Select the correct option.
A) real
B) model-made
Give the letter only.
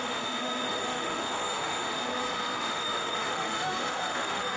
B